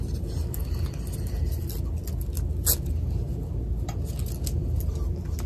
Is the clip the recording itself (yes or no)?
yes